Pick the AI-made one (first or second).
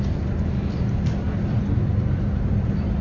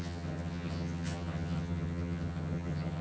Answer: second